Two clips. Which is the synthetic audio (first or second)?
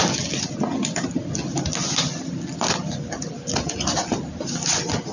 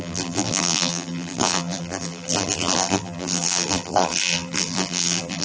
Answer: second